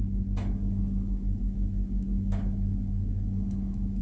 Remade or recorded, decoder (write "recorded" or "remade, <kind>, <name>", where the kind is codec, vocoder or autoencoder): remade, autoencoder, DAC-VAE